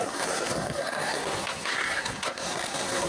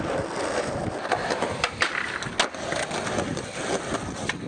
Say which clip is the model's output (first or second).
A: first